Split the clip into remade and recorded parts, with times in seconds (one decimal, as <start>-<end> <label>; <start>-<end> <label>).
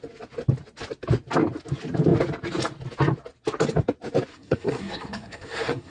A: 0.0-4.3 recorded; 4.3-5.9 remade